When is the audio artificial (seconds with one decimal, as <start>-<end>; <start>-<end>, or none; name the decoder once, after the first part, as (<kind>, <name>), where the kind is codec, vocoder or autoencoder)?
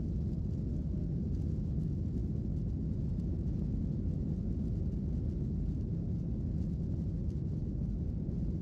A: none